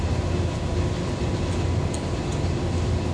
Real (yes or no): yes